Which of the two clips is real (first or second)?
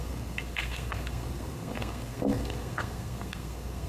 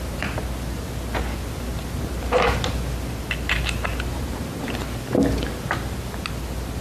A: second